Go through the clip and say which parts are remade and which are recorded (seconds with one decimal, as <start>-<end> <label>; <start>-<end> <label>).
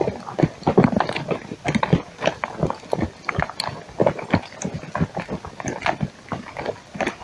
0.0-7.2 recorded